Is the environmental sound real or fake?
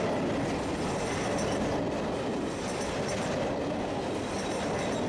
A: real